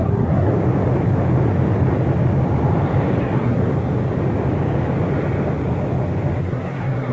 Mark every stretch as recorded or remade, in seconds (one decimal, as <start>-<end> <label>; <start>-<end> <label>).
0.0-0.5 remade; 0.5-3.2 recorded; 3.2-3.6 remade; 3.6-6.4 recorded; 6.4-7.1 remade